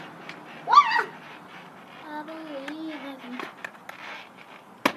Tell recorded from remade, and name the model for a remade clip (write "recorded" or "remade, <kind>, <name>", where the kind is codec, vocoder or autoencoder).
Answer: recorded